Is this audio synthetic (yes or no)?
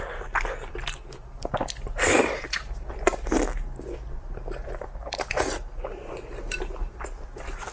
no